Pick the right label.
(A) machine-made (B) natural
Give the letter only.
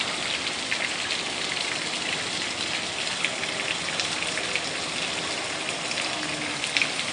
B